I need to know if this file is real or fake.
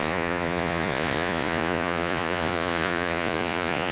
fake